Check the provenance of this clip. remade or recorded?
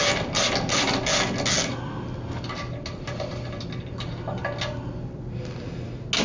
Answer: recorded